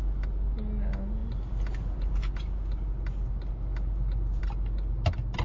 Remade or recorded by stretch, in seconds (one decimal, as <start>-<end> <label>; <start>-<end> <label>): 0.0-5.4 recorded